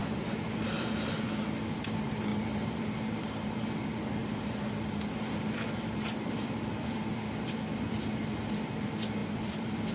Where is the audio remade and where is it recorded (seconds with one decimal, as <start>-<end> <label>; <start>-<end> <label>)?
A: 0.0-1.1 remade; 1.1-4.2 recorded; 4.2-8.1 remade; 8.1-9.2 recorded; 9.2-9.9 remade